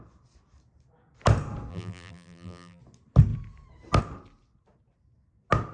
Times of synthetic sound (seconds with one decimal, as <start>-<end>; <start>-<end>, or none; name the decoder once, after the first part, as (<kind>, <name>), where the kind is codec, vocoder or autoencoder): 1.7-2.8 (vocoder, BigVGAN v2)